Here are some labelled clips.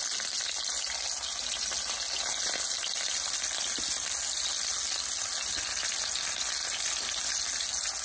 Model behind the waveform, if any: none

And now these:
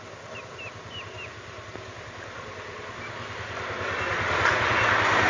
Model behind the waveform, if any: none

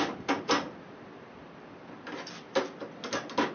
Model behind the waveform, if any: none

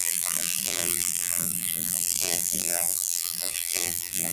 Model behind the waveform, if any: vocoder, BigVGAN v2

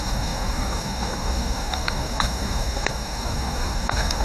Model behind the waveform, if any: codec, DAC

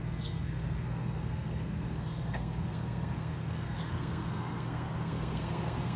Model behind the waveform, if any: codec, SNAC